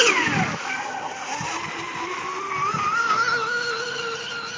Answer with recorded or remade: recorded